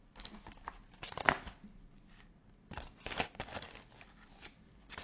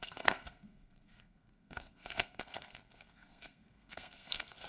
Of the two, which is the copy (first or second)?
second